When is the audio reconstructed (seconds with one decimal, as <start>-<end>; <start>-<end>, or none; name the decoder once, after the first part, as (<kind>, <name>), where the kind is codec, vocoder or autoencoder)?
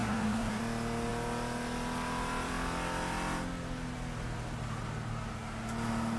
0.0-0.6 (codec, SNAC)